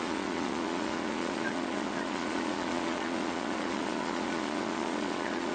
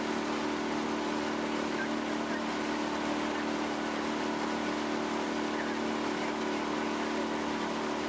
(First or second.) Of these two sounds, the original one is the second